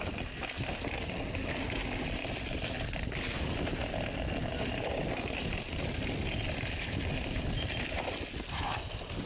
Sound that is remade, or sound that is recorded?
recorded